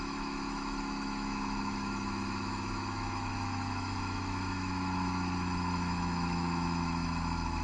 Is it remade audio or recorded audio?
remade